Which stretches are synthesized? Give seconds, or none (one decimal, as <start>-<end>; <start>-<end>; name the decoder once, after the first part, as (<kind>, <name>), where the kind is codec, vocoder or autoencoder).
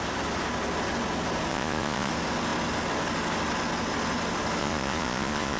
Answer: 1.5-2.1 (vocoder, Vocos); 4.6-5.6